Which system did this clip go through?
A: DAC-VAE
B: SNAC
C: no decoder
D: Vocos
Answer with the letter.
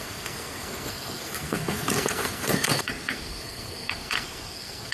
B